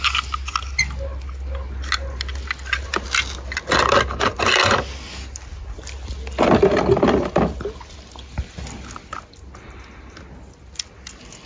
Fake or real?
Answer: real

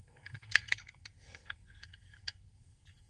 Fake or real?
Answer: fake